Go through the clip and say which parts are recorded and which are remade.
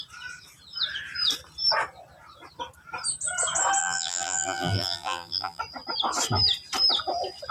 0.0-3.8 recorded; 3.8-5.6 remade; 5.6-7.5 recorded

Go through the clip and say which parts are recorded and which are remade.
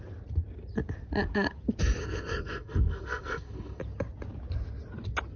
0.0-2.0 recorded; 2.0-3.8 remade; 3.8-5.4 recorded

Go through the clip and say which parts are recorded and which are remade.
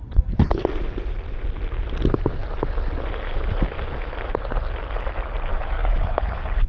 0.0-5.5 recorded; 5.5-6.7 remade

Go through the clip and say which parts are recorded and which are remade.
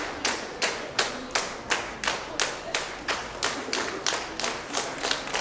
0.0-1.2 remade; 1.2-2.6 recorded; 2.6-3.2 remade; 3.2-5.4 recorded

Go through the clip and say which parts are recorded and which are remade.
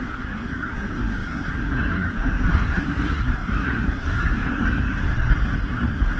0.0-6.2 remade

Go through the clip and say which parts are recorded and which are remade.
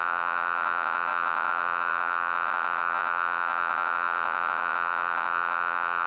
0.0-6.1 remade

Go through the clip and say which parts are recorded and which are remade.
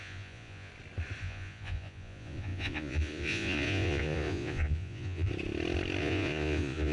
0.0-0.7 remade; 0.7-1.2 recorded; 1.2-5.3 remade; 5.3-6.0 recorded; 6.0-6.9 remade